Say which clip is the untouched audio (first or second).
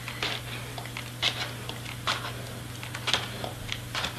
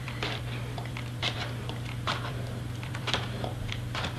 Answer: first